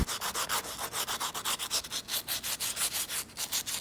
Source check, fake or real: real